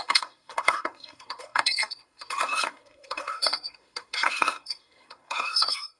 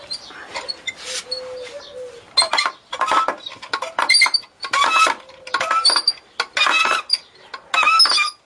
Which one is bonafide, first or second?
second